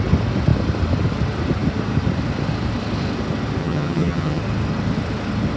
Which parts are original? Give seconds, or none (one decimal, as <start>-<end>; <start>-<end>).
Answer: 0.0-3.6; 4.4-5.6